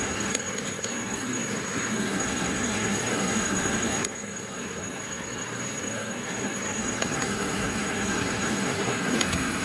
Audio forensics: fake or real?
fake